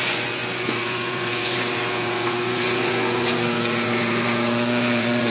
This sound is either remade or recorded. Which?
remade